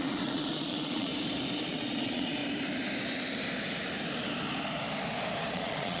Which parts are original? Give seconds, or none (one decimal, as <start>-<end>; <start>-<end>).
1.1-1.7; 2.4-5.5